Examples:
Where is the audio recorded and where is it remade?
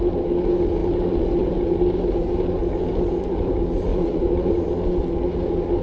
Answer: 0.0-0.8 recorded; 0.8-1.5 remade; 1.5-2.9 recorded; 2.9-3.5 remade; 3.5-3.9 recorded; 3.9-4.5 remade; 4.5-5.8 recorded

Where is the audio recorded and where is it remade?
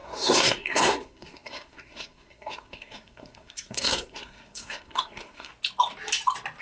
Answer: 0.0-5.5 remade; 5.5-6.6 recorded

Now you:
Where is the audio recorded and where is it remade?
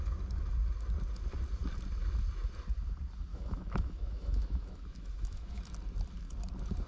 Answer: 0.0-3.3 recorded; 3.3-5.6 remade; 5.6-6.9 recorded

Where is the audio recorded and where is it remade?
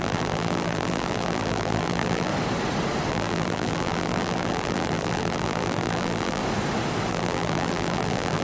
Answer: 0.0-2.3 remade; 2.3-3.1 recorded; 3.1-6.4 remade; 6.4-7.1 recorded; 7.1-8.4 remade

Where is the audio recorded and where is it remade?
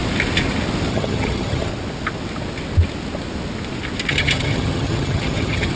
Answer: 0.0-0.9 recorded; 0.9-1.7 remade; 1.7-4.1 recorded; 4.1-5.8 remade